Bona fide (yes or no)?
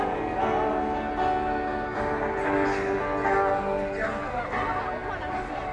yes